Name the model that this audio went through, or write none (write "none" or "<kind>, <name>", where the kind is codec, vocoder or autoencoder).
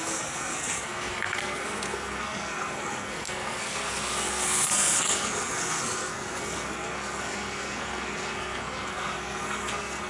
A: codec, SNAC